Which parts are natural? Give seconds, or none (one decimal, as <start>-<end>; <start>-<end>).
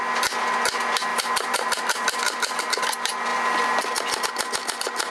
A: 0.0-1.1; 2.6-5.1